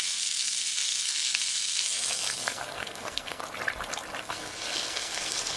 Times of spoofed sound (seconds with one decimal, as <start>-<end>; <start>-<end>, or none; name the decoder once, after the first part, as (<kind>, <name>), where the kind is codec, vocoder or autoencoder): 0.0-3.4 (codec, SNAC); 4.2-5.6